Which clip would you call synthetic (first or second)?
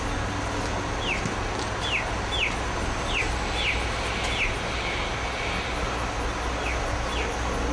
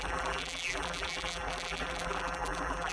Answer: second